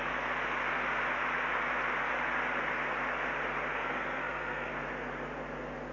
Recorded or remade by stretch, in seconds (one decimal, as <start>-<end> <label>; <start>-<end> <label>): 0.0-3.7 recorded; 3.7-4.7 remade; 4.7-5.9 recorded